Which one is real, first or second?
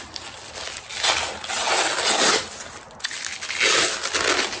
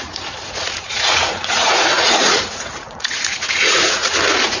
first